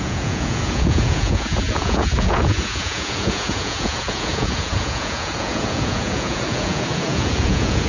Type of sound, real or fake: fake